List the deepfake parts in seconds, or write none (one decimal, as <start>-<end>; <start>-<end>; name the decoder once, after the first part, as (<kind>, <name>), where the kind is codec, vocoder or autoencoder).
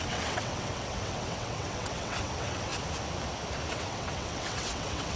0.0-2.7 (vocoder, WaveNeXt); 3.7-5.2